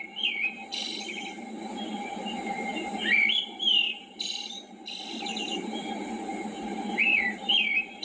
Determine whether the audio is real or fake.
fake